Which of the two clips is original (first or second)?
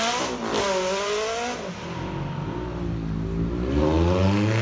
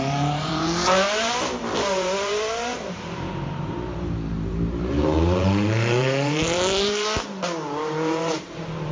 first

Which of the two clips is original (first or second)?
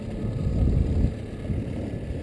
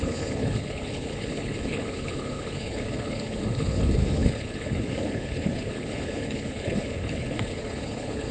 first